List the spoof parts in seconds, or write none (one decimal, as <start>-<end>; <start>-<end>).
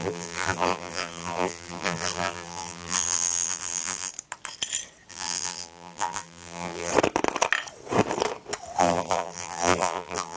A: 0.0-4.1; 5.1-6.9; 8.8-10.4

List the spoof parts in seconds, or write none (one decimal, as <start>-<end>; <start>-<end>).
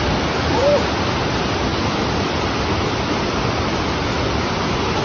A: none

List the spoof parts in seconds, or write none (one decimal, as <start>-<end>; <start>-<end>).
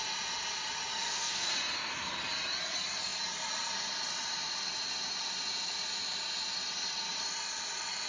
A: 0.9-1.5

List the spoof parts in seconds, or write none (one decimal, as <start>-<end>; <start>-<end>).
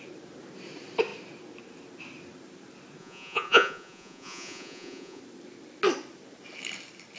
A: 3.0-5.2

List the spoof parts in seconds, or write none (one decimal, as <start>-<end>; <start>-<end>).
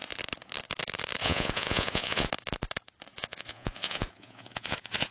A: 1.2-2.3; 3.1-5.1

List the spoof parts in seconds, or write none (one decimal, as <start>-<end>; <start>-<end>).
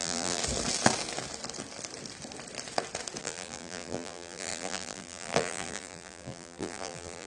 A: 0.0-0.4; 3.2-7.3